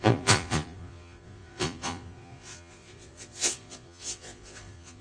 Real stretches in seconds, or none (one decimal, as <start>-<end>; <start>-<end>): none